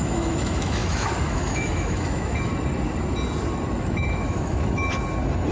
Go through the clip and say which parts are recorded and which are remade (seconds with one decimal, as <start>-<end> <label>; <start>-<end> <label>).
0.0-2.5 remade; 2.5-3.7 recorded; 3.7-4.9 remade; 4.9-5.5 recorded